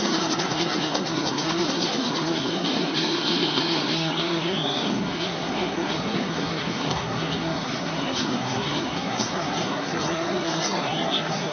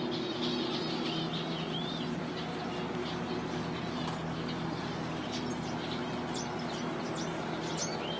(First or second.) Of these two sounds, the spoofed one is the first